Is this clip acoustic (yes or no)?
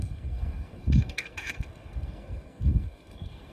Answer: no